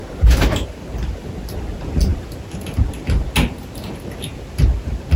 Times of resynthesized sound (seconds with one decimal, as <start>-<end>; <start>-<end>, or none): 0.0-0.8